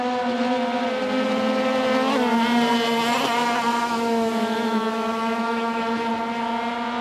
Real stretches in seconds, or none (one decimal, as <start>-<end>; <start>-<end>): 0.0-3.7; 6.0-7.0